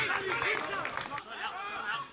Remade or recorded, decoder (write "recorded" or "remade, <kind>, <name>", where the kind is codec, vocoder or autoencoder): recorded